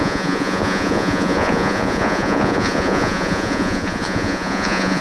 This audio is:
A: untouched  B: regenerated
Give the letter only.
B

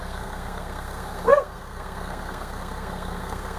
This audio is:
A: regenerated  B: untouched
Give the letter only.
A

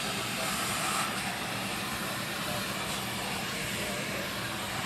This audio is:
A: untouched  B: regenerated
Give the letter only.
B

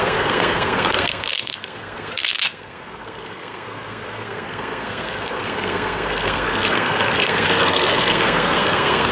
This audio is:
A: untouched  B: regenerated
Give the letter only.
B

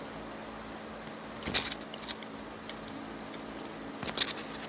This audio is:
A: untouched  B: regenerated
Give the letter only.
A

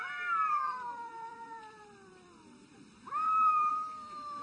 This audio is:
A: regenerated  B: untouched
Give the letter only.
A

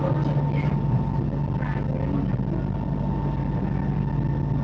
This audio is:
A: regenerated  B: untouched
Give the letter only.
B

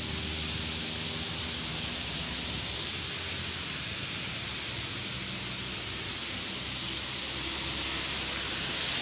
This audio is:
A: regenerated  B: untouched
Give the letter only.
B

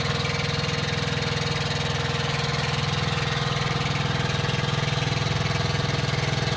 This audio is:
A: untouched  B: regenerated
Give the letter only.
A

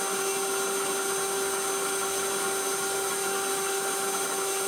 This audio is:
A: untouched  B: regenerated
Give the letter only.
A